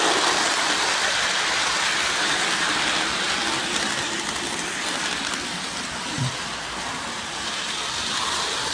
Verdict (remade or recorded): recorded